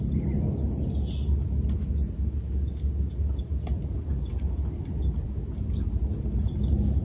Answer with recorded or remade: recorded